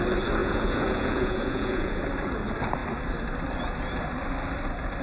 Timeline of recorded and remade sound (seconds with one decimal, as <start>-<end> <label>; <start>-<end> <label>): 0.0-0.4 recorded; 0.4-2.0 remade; 2.0-5.0 recorded